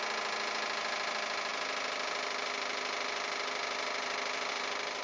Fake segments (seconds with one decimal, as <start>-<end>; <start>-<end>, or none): none

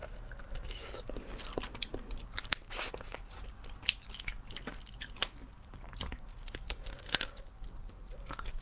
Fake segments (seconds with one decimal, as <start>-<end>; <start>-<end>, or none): 0.0-1.0; 1.9-3.5; 5.4-7.4

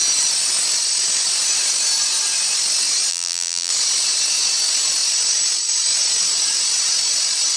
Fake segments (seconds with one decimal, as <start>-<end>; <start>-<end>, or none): 3.1-3.7

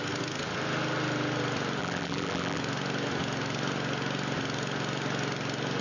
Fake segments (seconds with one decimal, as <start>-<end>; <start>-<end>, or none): 1.8-2.6

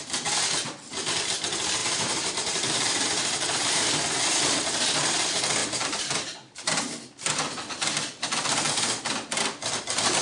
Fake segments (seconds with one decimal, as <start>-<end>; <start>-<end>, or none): 1.8-3.8; 5.6-6.6

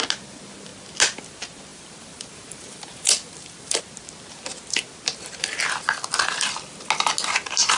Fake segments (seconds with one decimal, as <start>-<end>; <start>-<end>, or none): 1.7-3.8

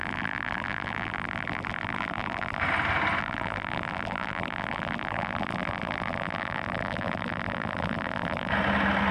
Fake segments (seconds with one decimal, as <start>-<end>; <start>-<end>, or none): 0.0-2.6; 3.2-8.5

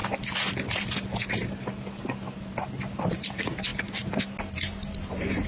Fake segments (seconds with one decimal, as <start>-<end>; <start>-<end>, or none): 3.0-5.5